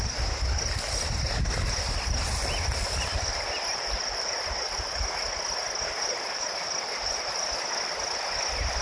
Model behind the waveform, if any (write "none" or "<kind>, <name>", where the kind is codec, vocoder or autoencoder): none